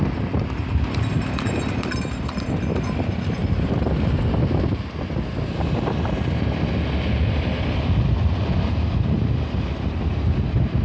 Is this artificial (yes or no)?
no